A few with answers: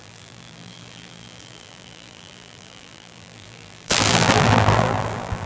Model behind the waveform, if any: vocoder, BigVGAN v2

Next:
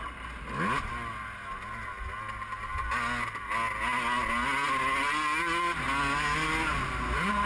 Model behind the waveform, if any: none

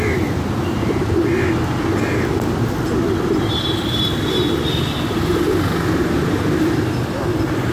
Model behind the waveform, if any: none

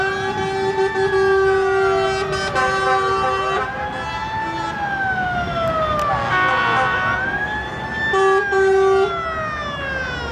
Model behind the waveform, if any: none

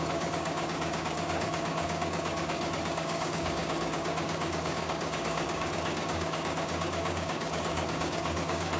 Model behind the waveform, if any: codec, DAC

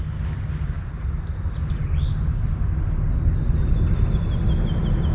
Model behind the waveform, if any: none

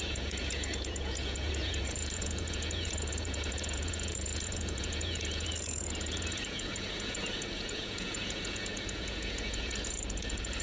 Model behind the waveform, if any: vocoder, Vocos